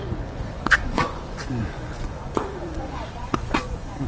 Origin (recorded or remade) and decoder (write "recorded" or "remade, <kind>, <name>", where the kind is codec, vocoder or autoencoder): remade, vocoder, Vocos